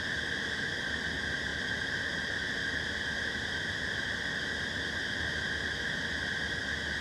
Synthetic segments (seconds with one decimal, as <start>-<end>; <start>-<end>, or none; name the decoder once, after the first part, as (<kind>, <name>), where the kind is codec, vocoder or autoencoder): none